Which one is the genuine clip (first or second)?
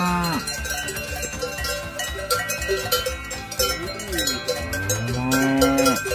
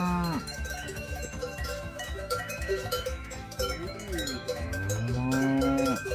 first